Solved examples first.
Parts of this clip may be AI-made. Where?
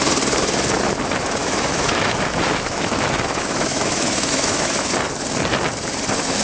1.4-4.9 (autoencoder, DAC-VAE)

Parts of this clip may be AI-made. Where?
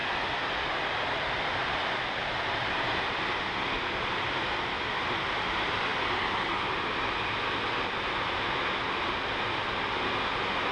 none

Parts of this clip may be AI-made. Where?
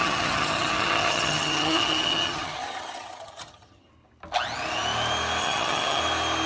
0.0-3.9 (vocoder, HiFi-GAN); 5.4-6.0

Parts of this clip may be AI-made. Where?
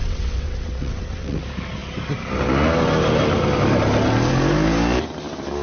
0.0-1.4 (vocoder, WaveNeXt)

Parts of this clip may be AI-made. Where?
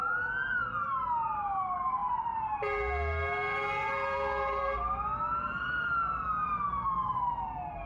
none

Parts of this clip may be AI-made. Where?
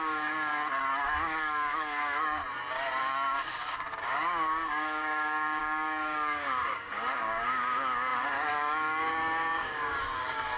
0.0-0.5 (codec, DAC); 1.0-2.4; 3.0-10.6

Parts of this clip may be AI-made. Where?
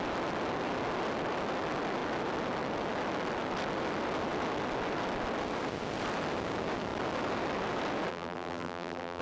8.1-9.2 (vocoder, BigVGAN v2)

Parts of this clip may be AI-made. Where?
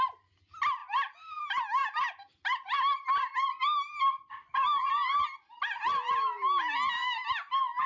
0.8-1.4 (vocoder, BigVGAN v2); 1.8-4.9